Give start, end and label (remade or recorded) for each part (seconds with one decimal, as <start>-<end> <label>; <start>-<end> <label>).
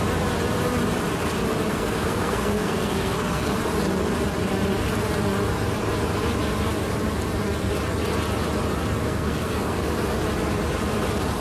0.0-1.7 recorded; 1.7-3.6 remade; 3.6-9.0 recorded; 9.0-9.9 remade; 9.9-11.4 recorded